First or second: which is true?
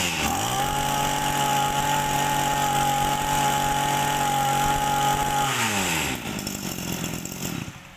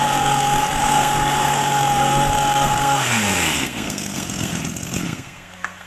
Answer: first